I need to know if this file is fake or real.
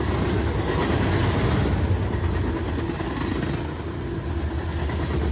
real